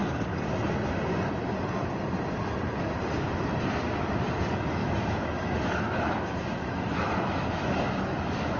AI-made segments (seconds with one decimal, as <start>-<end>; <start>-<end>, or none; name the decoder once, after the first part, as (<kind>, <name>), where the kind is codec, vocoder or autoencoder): 4.8-8.6 (autoencoder, DAC-VAE)